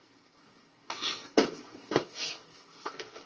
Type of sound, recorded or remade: remade